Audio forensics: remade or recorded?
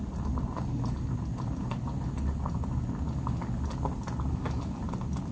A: recorded